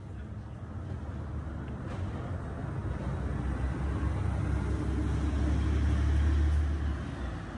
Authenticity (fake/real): real